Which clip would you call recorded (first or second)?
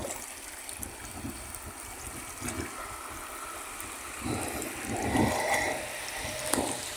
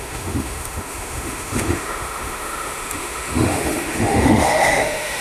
first